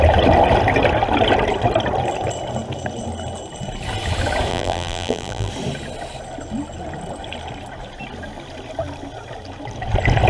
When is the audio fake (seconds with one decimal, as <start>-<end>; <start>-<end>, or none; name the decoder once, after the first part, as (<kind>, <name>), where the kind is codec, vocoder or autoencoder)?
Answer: 4.5-5.5 (vocoder, BigVGAN v2)